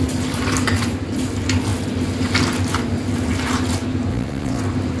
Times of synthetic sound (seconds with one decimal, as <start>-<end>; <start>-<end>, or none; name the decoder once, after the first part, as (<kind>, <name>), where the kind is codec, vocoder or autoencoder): 4.1-4.6 (vocoder, WaveNeXt)